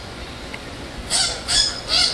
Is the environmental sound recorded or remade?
remade